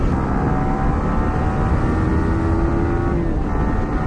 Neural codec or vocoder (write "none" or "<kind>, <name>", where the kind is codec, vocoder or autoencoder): none